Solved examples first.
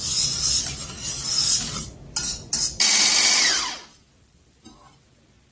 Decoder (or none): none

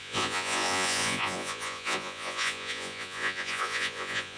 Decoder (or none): vocoder, Vocos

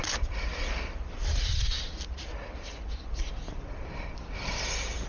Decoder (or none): none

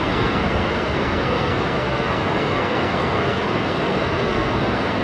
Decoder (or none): codec, SNAC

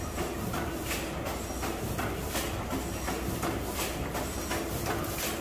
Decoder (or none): none